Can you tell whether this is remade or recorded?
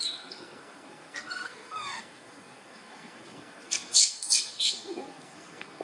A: remade